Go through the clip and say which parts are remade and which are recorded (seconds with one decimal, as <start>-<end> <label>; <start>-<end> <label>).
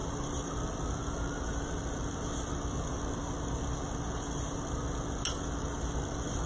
0.0-6.5 recorded